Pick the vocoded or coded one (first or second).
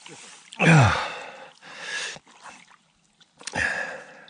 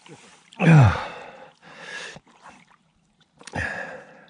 second